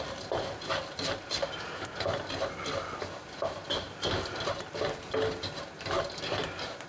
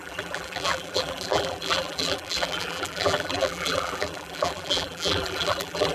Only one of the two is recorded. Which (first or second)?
first